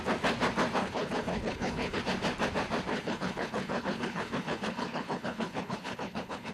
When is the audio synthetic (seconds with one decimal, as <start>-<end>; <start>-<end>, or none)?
0.8-2.0; 2.9-6.5